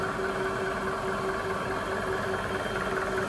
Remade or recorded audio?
recorded